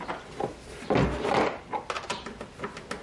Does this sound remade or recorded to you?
recorded